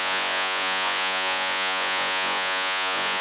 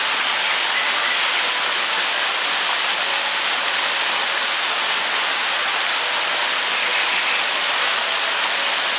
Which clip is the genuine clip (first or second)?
second